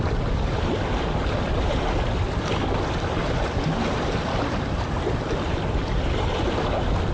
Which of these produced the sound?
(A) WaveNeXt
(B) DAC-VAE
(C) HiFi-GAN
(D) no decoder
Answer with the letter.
D